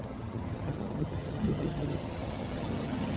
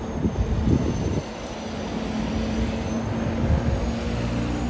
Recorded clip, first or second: second